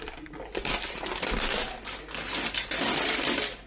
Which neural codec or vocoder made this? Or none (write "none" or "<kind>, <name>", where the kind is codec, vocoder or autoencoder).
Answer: none